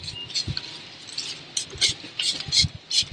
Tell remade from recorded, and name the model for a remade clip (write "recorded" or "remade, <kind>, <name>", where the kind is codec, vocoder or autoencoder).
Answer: recorded